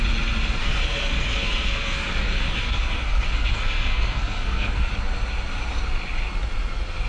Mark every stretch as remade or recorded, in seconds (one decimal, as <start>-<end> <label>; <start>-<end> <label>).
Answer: 0.0-0.6 recorded; 0.6-4.9 remade; 4.9-7.1 recorded